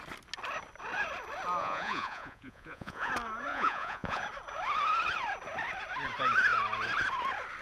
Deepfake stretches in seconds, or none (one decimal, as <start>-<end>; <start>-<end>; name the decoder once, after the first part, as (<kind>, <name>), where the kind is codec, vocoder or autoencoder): 1.6-3.1 (vocoder, Vocos); 3.5-4.2